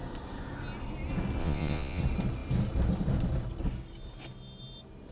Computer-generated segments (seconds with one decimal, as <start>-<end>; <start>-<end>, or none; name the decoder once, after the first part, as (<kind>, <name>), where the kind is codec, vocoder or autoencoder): 1.4-2.0 (vocoder, Vocos)